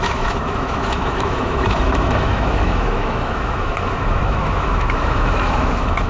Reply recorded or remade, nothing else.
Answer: remade